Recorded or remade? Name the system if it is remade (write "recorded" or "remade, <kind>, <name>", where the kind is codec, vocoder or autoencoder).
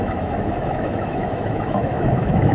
remade, autoencoder, DAC-VAE